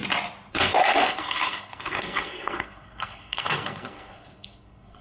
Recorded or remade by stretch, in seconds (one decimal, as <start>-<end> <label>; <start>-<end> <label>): 0.0-0.5 recorded; 0.5-5.0 remade